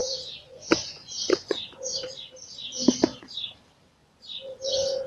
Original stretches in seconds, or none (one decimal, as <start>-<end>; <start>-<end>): 2.3-4.0